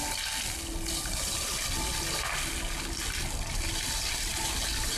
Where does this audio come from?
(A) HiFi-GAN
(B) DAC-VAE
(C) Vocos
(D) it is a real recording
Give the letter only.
D